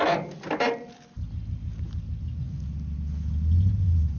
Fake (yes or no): no